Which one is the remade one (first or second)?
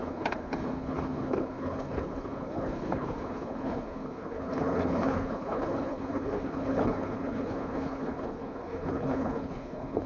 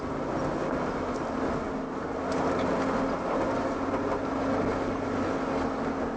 first